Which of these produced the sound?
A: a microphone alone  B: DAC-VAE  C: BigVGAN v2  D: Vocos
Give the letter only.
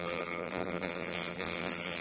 C